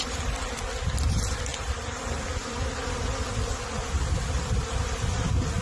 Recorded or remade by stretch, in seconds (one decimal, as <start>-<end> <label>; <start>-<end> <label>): 0.0-1.5 recorded; 1.5-2.2 remade; 2.2-5.6 recorded

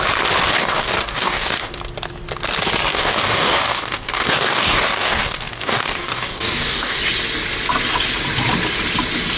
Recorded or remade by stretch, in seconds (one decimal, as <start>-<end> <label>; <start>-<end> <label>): 0.0-0.5 recorded; 0.5-1.8 remade; 1.8-2.9 recorded; 2.9-7.0 remade; 7.0-9.4 recorded

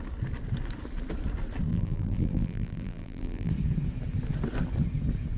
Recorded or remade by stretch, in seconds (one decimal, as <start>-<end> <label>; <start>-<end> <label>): 0.0-1.7 recorded; 1.7-3.5 remade; 3.5-5.4 recorded